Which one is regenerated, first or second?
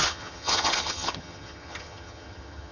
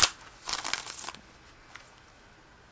first